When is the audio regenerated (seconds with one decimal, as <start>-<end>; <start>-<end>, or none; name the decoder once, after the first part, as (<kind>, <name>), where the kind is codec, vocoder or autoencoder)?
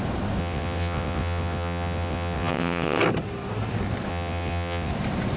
0.4-3.0 (vocoder, WaveNeXt); 4.1-4.9